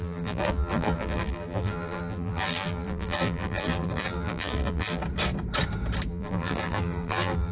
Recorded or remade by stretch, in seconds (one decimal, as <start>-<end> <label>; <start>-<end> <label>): 0.0-5.0 remade; 5.0-6.1 recorded; 6.1-7.5 remade